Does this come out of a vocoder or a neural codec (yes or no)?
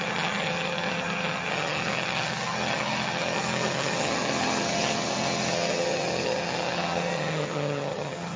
yes